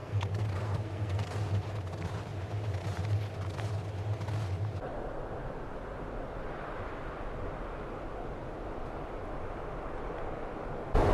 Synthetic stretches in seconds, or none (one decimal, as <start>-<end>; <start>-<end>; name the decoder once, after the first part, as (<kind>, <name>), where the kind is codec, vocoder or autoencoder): 0.0-1.7 (codec, SNAC)